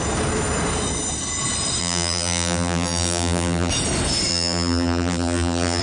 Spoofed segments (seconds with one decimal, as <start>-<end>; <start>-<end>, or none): 1.8-3.7; 4.3-5.8